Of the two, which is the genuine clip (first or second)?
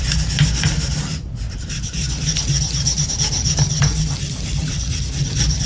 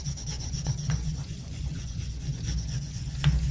first